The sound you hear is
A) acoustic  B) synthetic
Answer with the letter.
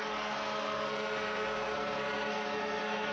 B